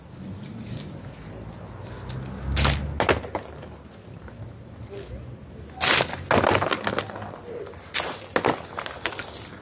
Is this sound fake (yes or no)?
no